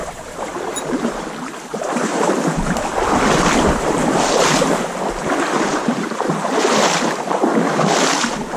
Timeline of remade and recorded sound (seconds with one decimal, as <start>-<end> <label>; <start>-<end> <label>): 0.0-0.8 remade; 0.8-1.7 recorded; 1.7-2.3 remade; 2.3-5.7 recorded; 5.7-6.3 remade; 6.3-8.6 recorded